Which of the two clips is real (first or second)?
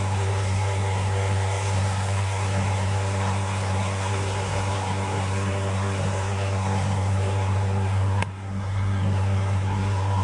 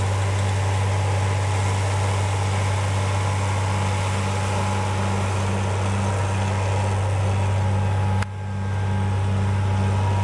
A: second